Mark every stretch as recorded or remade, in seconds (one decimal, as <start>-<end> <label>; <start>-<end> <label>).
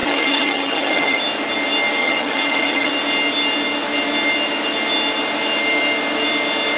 0.0-1.2 remade; 1.2-2.0 recorded; 2.0-2.9 remade; 2.9-6.8 recorded